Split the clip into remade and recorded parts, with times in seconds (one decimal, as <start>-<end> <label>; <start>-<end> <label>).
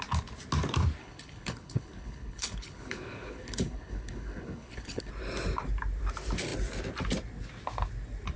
0.0-1.0 recorded; 1.0-5.1 remade; 5.1-8.4 recorded